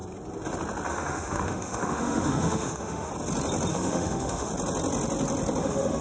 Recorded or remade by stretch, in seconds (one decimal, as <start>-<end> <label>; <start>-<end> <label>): 0.0-0.9 recorded; 0.9-3.1 remade; 3.1-3.7 recorded; 3.7-4.5 remade; 4.5-5.6 recorded; 5.6-6.0 remade